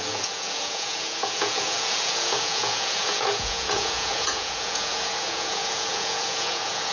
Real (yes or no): no